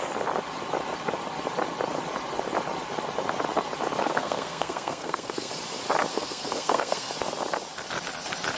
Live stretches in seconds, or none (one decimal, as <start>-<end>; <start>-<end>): 0.0-4.0; 5.5-6.1; 7.1-8.6